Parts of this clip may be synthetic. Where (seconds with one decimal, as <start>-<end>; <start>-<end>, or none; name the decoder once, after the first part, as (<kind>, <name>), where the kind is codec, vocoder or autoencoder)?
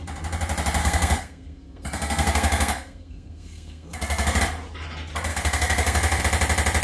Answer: 0.8-4.4 (codec, SNAC); 5.3-6.2